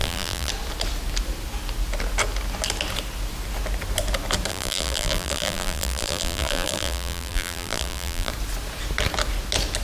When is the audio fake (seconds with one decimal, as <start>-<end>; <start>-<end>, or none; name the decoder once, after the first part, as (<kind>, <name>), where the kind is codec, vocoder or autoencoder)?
0.0-0.5 (vocoder, BigVGAN v2); 4.5-8.3